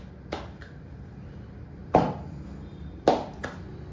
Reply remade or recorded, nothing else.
recorded